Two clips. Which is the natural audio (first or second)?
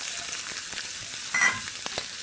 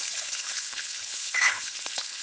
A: first